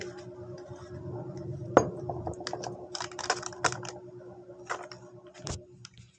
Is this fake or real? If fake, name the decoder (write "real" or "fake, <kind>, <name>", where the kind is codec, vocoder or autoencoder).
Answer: real